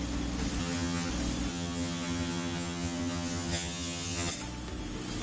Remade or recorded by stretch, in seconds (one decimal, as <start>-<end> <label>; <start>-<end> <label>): 0.0-0.6 recorded; 0.6-1.1 remade; 1.1-1.5 recorded; 1.5-4.3 remade; 4.3-5.2 recorded